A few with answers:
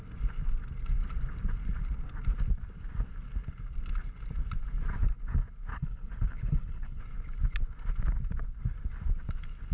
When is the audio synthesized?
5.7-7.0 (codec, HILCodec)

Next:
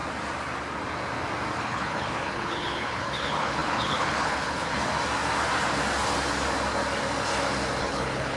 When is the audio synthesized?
1.6-4.9 (codec, HILCodec); 7.8-8.4

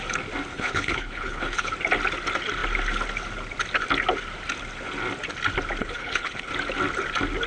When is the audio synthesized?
0.5-1.7 (codec, HILCodec); 5.8-6.5

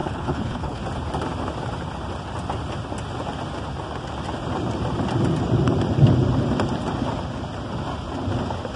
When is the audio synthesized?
0.0-0.8 (codec, HILCodec)

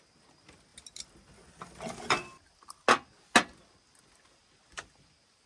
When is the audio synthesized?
none